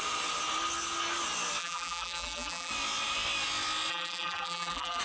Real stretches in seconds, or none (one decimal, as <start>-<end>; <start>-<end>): 0.0-1.6; 2.7-3.9

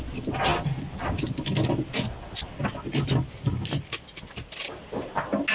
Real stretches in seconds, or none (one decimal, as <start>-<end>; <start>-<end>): 0.0-5.5

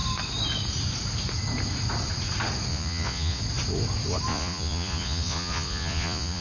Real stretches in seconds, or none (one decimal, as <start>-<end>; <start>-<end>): 0.0-2.7; 3.4-4.3

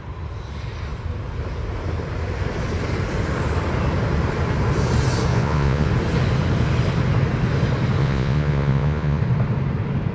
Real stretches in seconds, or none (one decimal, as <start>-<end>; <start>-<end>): 0.0-5.3; 5.9-8.0; 9.2-10.1